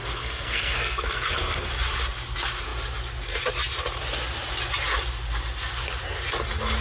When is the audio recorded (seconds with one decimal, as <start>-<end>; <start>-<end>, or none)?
1.7-6.8

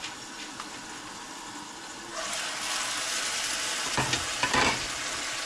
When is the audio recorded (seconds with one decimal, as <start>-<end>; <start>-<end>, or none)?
0.0-5.5

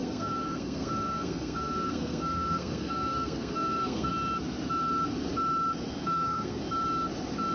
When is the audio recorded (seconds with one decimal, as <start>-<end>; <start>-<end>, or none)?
4.1-6.0; 6.6-7.5

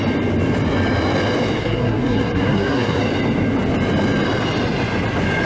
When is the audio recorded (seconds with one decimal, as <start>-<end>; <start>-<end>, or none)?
0.0-1.6; 3.0-5.5

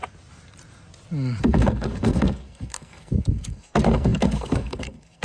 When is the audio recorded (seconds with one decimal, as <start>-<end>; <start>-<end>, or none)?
0.0-1.4